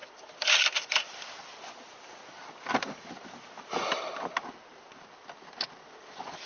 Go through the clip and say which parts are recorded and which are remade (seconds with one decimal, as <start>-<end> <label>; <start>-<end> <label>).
0.0-6.5 recorded

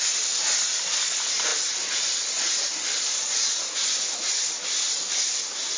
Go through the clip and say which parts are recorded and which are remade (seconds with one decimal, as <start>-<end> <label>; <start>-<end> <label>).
0.0-5.8 recorded

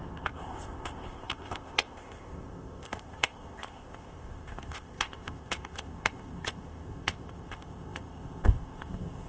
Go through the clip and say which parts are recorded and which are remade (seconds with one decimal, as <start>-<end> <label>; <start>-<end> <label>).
0.0-9.3 remade